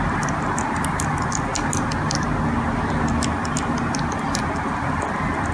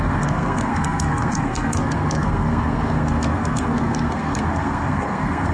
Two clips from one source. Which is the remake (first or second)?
second